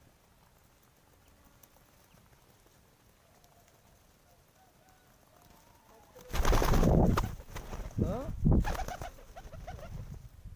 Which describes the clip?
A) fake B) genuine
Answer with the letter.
B